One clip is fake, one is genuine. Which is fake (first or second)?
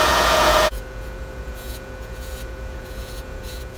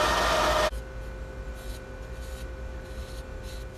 first